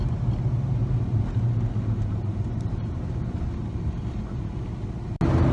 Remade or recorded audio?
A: recorded